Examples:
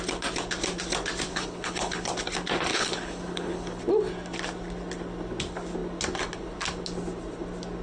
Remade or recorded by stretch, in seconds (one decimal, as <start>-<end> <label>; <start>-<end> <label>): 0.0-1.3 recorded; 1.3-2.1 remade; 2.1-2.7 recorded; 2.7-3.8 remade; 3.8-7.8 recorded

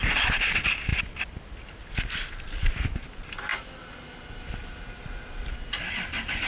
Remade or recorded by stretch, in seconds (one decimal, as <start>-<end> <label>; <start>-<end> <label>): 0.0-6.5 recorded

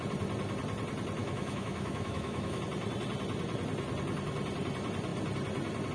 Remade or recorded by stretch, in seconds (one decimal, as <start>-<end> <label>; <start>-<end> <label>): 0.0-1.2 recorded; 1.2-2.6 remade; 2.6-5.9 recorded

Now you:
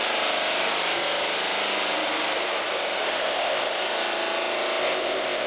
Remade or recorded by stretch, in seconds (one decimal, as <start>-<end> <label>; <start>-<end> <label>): 0.0-3.1 recorded; 3.1-3.6 remade; 3.6-4.8 recorded; 4.8-5.5 remade

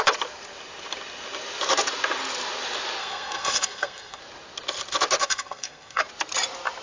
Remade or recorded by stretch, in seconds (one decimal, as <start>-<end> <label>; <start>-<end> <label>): 0.0-3.0 recorded; 3.0-4.2 remade; 4.2-5.2 recorded; 5.2-6.0 remade; 6.0-6.8 recorded

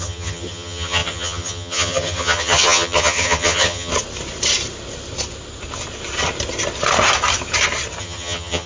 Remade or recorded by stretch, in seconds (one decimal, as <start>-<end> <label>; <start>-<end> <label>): 0.0-3.9 remade; 3.9-8.0 recorded; 8.0-8.7 remade

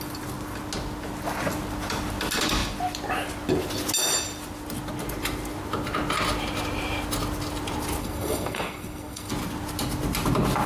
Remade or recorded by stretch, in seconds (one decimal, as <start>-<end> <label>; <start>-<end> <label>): 0.0-8.0 recorded; 8.0-9.3 remade; 9.3-10.7 recorded

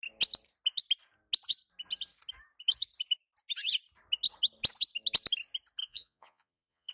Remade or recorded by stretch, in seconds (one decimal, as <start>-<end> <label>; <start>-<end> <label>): 0.0-5.8 recorded; 5.8-6.9 remade